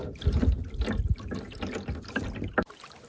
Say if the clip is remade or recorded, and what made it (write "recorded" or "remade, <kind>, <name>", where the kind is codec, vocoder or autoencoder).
recorded